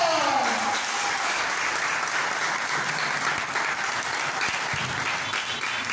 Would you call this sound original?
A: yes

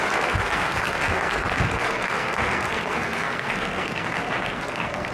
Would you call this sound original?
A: no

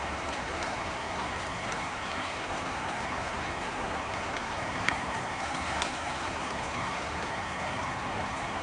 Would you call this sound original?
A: no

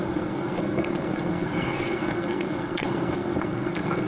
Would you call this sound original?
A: no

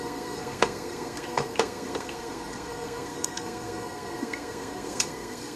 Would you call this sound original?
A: no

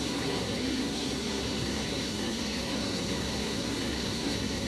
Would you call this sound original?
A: no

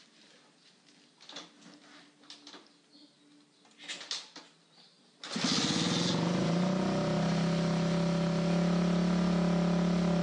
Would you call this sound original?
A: yes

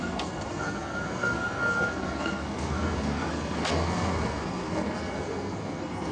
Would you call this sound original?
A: no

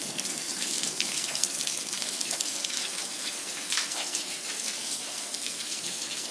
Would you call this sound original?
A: no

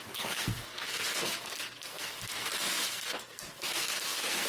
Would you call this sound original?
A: no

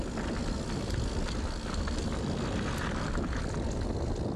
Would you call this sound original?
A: yes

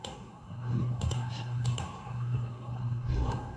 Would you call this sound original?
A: no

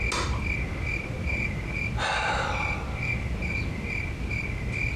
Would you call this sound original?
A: yes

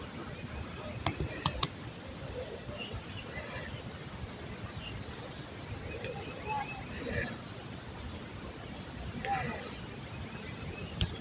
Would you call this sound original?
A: yes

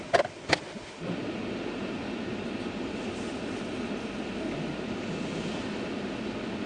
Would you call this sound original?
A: yes